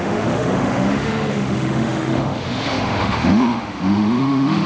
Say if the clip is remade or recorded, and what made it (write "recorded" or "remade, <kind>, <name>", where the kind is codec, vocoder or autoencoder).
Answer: remade, autoencoder, DAC-VAE